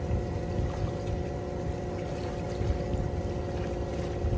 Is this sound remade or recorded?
recorded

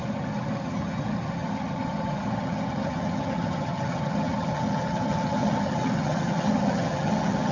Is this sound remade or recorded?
remade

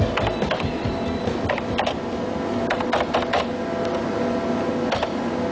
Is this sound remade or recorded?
recorded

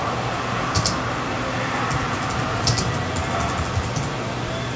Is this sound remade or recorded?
recorded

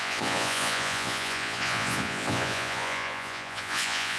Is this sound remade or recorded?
remade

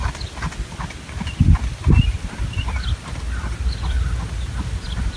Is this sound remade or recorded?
recorded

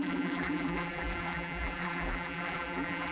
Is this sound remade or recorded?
remade